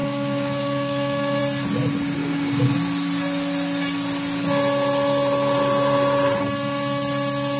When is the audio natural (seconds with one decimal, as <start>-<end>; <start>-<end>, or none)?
1.4-2.2; 2.7-7.6